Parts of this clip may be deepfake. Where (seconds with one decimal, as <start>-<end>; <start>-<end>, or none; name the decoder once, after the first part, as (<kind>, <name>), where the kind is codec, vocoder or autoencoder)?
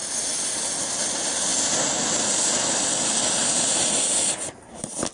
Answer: none